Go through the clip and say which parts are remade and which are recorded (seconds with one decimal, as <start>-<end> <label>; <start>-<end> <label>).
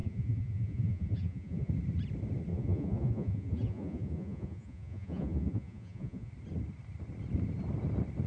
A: 0.0-1.7 remade; 1.7-2.5 recorded; 2.5-6.3 remade; 6.3-8.3 recorded